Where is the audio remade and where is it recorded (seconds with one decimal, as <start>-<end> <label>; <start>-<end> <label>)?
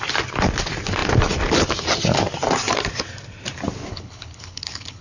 0.0-3.9 recorded; 3.9-5.0 remade